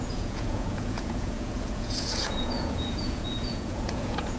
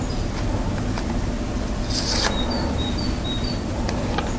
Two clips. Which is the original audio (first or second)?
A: second